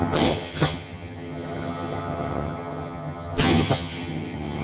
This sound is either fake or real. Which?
fake